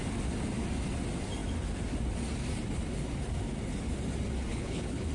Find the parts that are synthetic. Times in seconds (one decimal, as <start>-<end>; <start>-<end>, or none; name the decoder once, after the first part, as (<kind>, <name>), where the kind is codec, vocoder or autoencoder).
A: 4.5-5.1 (codec, HILCodec)